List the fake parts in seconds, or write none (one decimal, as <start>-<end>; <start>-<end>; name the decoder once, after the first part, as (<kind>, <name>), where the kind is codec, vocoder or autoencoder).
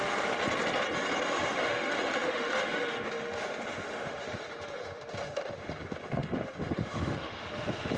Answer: 0.0-0.4 (autoencoder, DAC-VAE); 1.3-8.0